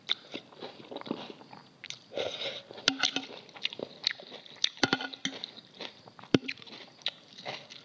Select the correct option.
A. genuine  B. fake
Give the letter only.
A